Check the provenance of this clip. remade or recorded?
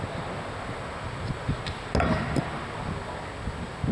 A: recorded